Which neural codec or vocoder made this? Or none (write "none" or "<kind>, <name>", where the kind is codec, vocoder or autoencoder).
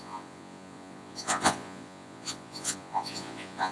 vocoder, Vocos